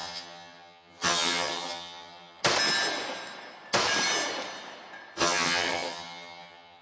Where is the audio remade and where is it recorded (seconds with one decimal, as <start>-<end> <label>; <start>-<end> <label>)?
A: 0.0-2.4 remade; 2.4-5.2 recorded; 5.2-6.8 remade